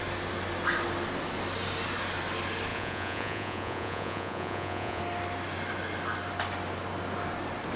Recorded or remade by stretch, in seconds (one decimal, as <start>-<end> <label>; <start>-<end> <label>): 0.0-2.7 recorded; 2.7-5.0 remade; 5.0-7.8 recorded